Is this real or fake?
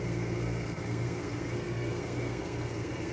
fake